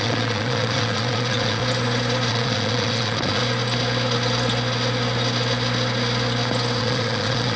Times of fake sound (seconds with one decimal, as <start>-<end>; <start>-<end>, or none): 0.0-1.6; 2.3-3.4; 6.8-7.6